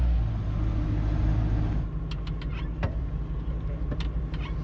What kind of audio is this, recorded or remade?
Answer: recorded